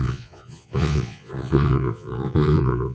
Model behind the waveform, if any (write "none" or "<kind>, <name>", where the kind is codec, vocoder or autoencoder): vocoder, Vocos